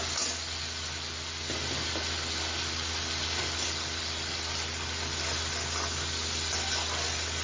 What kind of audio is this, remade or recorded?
recorded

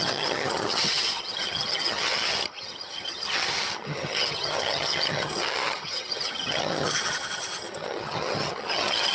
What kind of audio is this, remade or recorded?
remade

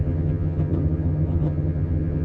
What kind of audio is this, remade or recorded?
remade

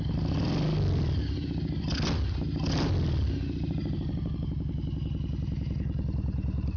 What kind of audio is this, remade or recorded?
recorded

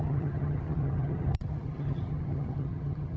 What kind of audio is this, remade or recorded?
remade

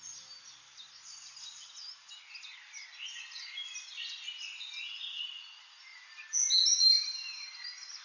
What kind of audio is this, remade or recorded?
recorded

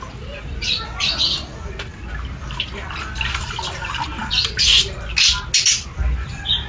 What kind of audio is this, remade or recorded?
recorded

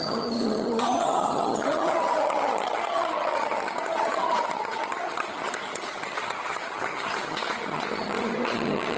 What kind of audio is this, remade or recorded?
remade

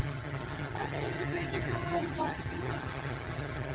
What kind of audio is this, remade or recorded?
remade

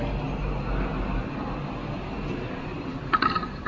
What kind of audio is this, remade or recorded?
recorded